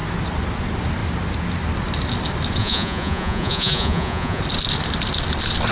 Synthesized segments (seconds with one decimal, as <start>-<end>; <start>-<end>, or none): 2.6-4.4